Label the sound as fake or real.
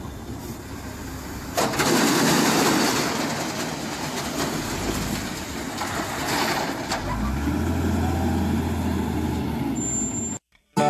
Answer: real